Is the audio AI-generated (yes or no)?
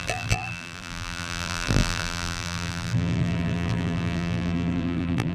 yes